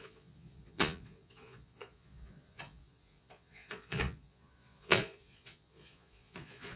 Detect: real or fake fake